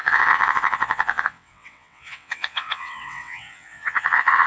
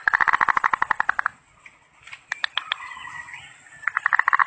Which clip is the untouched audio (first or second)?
second